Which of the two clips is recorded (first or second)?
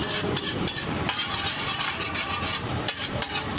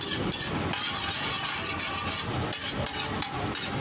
second